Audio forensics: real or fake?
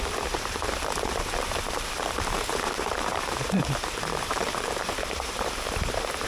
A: fake